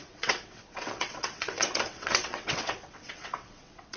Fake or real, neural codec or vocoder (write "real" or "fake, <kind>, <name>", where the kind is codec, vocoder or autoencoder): fake, vocoder, WaveNeXt